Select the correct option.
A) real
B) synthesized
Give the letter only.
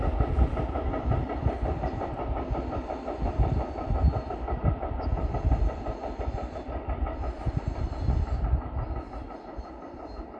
B